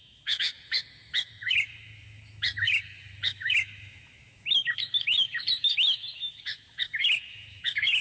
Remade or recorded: remade